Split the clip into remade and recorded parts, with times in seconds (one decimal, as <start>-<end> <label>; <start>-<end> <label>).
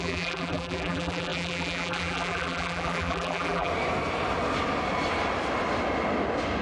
0.0-3.7 remade; 3.7-6.6 recorded